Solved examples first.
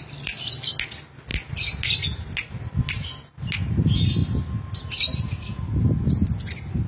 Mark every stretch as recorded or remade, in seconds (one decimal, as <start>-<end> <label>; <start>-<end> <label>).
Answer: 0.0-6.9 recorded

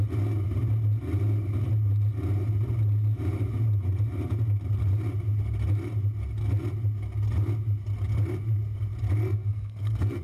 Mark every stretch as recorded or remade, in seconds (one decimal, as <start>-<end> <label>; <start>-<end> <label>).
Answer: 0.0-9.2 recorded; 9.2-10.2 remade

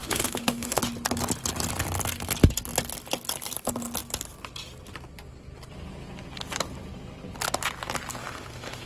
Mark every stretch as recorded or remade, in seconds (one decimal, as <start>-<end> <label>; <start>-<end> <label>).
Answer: 0.0-0.8 remade; 0.8-8.2 recorded; 8.2-8.9 remade

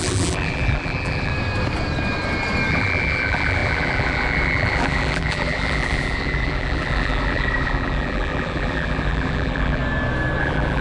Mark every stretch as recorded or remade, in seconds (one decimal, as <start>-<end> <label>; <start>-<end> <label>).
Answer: 0.0-1.3 remade; 1.3-2.7 recorded; 2.7-9.8 remade; 9.8-10.4 recorded; 10.4-10.8 remade

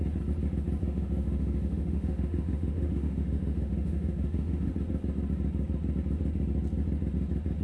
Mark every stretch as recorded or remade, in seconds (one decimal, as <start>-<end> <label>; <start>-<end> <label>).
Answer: 0.0-0.8 recorded; 0.8-4.7 remade; 4.7-7.6 recorded